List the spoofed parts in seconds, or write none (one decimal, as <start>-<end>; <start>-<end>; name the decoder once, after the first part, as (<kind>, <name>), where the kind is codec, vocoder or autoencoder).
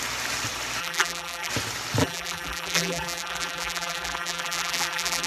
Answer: 0.8-1.5 (vocoder, BigVGAN v2); 2.0-5.3